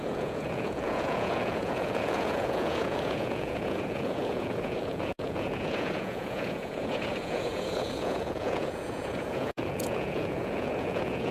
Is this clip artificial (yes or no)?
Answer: yes